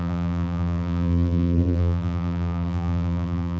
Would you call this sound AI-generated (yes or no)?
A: yes